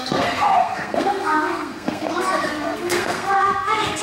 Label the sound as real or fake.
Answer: fake